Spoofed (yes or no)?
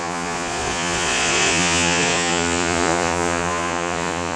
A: yes